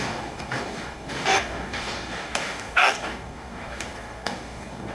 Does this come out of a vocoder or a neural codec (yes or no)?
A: yes